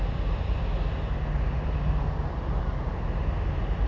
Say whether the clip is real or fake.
real